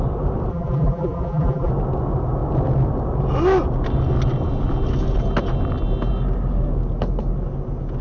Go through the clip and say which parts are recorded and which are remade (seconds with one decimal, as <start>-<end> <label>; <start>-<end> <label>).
0.0-0.5 recorded; 0.5-1.7 remade; 1.7-8.0 recorded